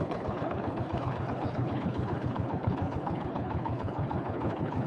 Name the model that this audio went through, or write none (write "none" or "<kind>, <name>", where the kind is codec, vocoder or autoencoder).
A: codec, HILCodec